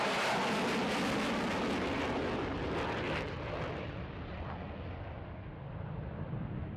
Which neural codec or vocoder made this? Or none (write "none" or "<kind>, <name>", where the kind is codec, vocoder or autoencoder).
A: none